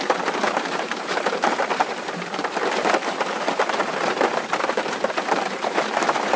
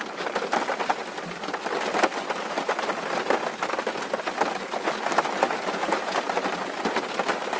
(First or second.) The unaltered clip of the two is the second